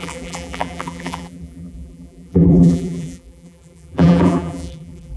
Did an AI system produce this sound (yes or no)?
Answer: yes